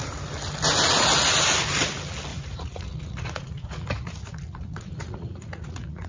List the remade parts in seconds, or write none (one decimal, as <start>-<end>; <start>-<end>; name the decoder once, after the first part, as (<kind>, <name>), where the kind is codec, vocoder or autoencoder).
2.3-6.1 (vocoder, Vocos)